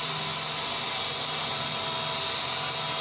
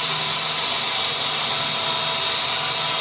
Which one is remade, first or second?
second